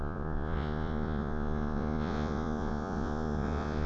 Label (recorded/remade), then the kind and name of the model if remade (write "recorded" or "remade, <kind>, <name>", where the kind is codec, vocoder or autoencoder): remade, vocoder, Vocos